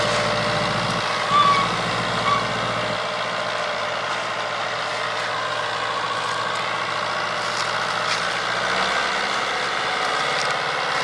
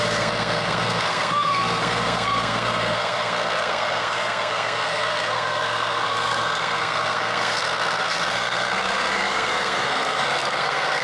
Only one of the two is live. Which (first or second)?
first